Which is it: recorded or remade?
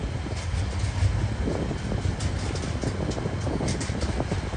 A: recorded